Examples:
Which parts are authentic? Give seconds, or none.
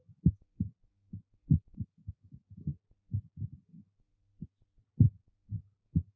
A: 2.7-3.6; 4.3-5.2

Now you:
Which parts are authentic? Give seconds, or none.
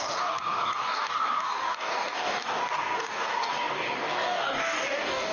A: none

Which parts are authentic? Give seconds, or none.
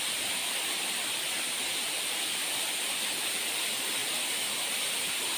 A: 0.0-5.4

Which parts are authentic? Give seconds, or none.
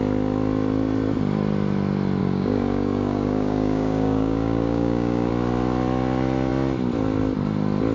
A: 0.0-2.2; 5.3-7.9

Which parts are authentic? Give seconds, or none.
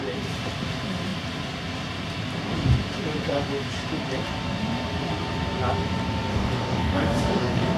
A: 0.0-6.3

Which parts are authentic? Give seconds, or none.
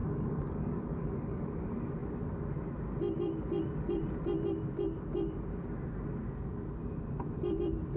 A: 1.5-8.0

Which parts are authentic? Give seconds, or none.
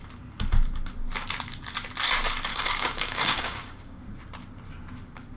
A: 0.0-2.5; 4.0-5.4